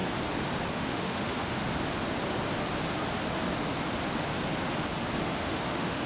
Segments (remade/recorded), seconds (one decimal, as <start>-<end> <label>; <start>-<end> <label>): 0.0-0.7 recorded; 0.7-1.6 remade; 1.6-5.3 recorded; 5.3-6.1 remade